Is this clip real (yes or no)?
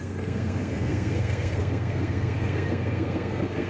no